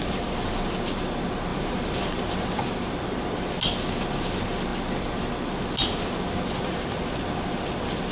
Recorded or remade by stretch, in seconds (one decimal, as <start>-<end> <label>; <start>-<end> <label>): 0.0-1.5 recorded; 1.5-2.6 remade; 2.6-8.1 recorded